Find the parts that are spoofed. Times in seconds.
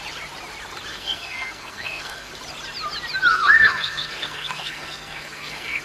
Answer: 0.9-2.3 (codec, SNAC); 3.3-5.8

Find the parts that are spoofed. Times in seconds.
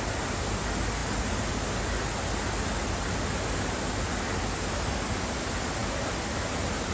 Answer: none